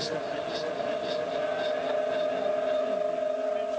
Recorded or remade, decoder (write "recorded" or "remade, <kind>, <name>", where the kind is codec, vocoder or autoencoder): recorded